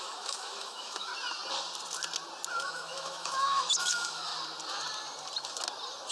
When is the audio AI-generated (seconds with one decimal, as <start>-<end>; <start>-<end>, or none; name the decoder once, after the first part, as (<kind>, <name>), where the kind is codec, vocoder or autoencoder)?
0.0-1.1 (autoencoder, DAC-VAE); 2.5-4.3